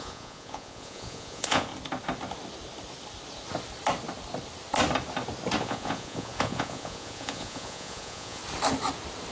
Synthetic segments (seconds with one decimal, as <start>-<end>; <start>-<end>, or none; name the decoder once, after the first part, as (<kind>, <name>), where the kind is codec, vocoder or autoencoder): 0.0-1.7 (vocoder, Vocos); 5.6-8.4